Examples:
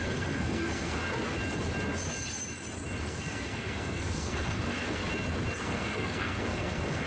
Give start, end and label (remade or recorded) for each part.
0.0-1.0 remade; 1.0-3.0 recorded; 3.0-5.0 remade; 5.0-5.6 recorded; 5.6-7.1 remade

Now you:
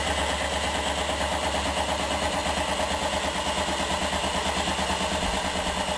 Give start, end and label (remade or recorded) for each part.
0.0-6.0 recorded

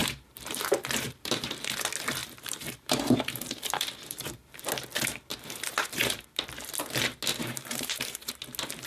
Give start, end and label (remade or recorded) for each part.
0.0-1.5 remade; 1.5-2.2 recorded; 2.2-4.6 remade; 4.6-5.3 recorded; 5.3-6.2 remade; 6.2-7.3 recorded; 7.3-8.4 remade; 8.4-8.9 recorded

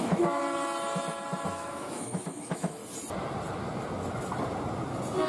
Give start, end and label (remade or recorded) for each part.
0.0-0.4 remade; 0.4-1.5 recorded; 1.5-2.8 remade; 2.8-5.3 recorded

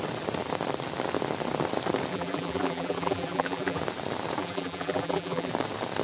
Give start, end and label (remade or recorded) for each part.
0.0-2.1 recorded; 2.1-3.8 remade; 3.8-4.4 recorded; 4.4-5.5 remade; 5.5-6.0 recorded

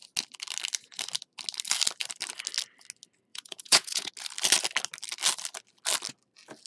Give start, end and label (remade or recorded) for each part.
0.0-3.3 recorded; 3.3-4.1 remade; 4.1-6.7 recorded